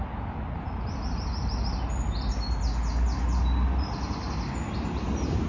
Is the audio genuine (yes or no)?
yes